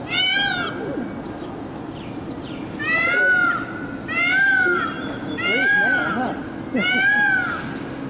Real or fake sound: real